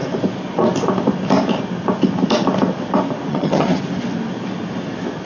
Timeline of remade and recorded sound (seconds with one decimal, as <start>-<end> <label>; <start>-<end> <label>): 0.0-3.3 recorded; 3.3-3.8 remade; 3.8-5.3 recorded